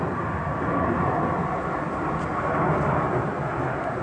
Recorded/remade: recorded